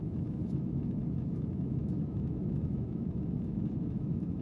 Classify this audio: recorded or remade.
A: remade